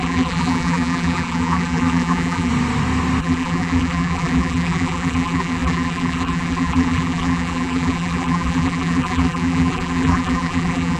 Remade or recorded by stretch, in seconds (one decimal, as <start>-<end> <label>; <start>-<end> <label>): 0.0-2.5 remade; 2.5-3.2 recorded; 3.2-11.0 remade